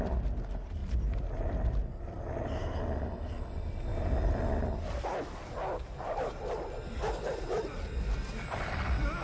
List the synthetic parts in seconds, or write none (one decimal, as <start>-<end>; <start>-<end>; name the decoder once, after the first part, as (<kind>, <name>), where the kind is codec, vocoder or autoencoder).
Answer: none